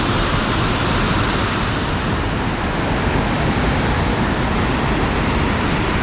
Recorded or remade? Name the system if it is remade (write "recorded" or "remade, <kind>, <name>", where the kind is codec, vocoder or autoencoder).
recorded